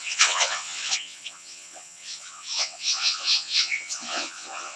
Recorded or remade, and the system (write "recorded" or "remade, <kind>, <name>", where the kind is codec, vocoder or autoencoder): remade, vocoder, WaveNeXt